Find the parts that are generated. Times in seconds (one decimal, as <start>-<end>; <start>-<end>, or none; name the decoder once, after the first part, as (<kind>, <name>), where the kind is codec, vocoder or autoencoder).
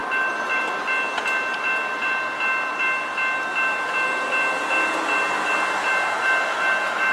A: none